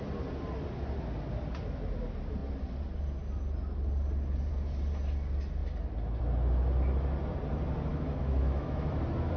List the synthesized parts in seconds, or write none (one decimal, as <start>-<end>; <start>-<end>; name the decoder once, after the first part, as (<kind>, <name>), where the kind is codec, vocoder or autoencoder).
7.9-8.9 (autoencoder, DAC-VAE)